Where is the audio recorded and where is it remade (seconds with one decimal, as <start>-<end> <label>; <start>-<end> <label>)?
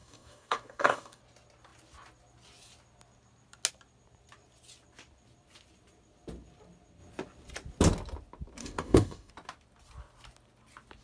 0.0-1.2 remade; 1.2-8.6 recorded; 8.6-9.3 remade; 9.3-11.0 recorded